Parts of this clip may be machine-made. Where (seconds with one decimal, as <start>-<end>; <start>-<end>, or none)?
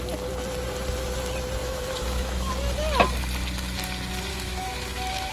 1.6-2.5; 4.3-5.3